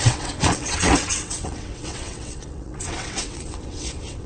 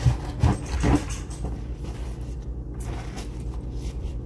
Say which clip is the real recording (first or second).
second